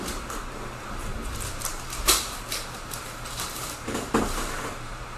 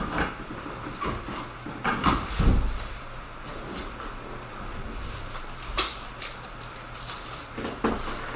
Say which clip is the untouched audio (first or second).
second